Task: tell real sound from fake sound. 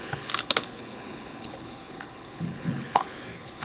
fake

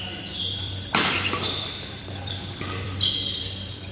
fake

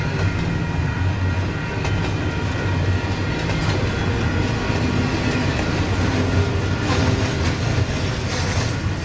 real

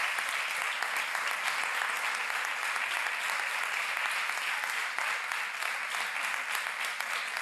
real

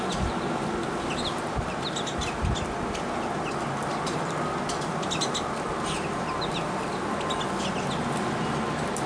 real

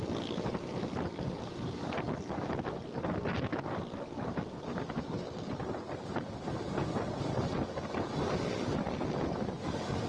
real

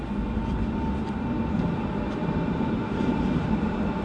real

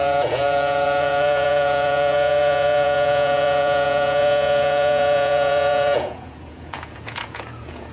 fake